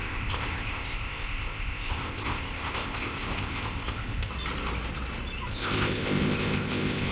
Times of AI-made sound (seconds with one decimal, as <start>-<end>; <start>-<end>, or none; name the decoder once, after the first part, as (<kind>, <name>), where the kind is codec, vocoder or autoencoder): 0.0-4.3 (codec, ZipCodec); 5.5-7.1